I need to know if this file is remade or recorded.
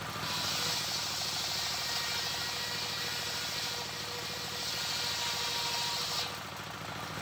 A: recorded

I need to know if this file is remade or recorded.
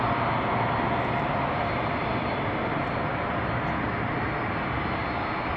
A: recorded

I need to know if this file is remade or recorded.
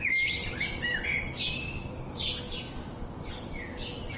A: recorded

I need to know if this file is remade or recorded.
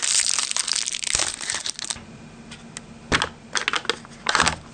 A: recorded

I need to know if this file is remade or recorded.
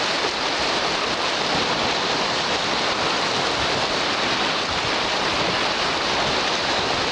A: recorded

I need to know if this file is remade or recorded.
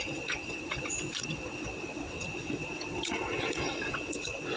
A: remade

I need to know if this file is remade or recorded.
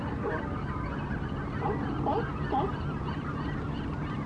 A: recorded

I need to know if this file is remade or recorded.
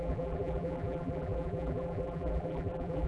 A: remade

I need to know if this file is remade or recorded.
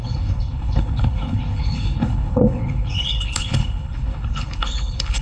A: remade